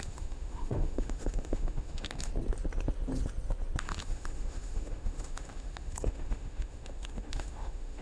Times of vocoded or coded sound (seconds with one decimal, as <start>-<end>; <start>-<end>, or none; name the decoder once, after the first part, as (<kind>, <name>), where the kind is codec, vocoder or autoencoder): 0.0-2.3 (autoencoder, DAC-VAE); 3.8-8.0